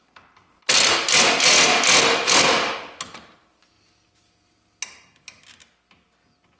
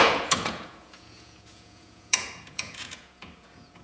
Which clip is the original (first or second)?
first